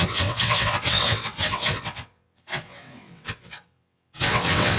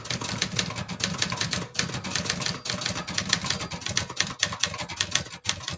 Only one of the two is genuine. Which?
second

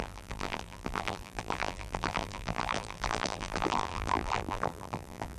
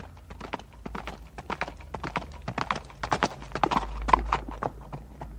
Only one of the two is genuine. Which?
second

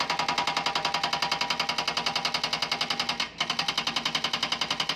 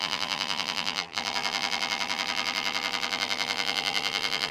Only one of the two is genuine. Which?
first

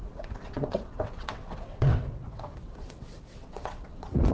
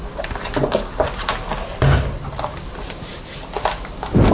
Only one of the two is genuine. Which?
second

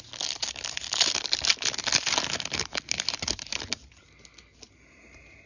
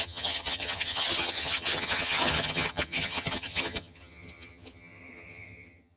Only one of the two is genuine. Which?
first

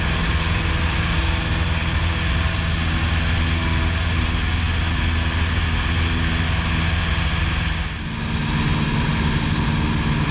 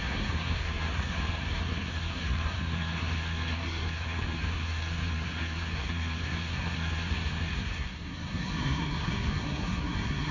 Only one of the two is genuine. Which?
first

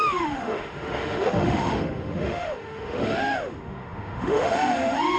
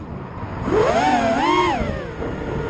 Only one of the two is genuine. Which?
second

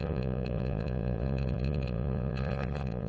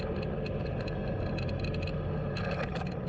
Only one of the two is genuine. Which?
second